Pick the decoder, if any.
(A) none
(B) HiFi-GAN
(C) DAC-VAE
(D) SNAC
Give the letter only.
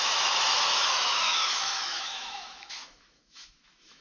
C